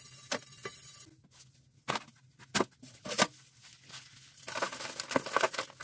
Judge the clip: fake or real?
real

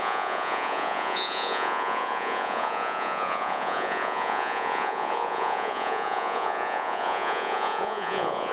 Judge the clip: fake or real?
fake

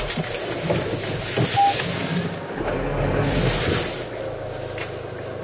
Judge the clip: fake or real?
real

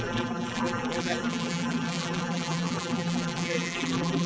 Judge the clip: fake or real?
fake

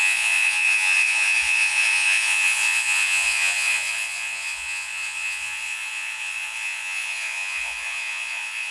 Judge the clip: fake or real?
fake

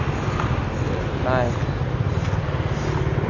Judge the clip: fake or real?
real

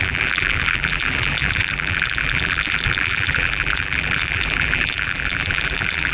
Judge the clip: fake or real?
fake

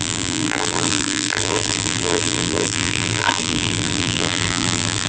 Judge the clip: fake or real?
fake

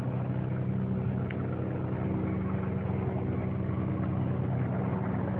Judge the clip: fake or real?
real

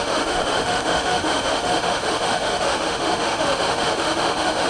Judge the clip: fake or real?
fake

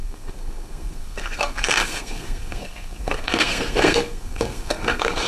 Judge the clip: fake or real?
fake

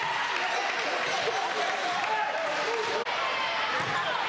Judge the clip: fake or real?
real